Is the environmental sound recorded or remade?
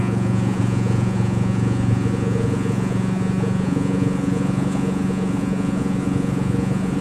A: remade